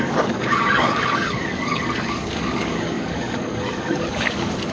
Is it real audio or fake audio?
fake